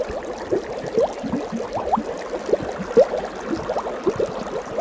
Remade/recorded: recorded